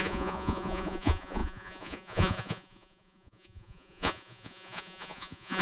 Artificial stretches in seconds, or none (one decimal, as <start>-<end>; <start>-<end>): 0.0-5.6